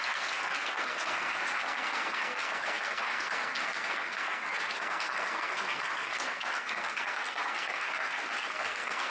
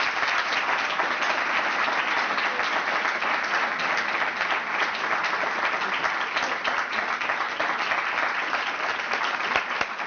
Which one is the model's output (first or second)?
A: first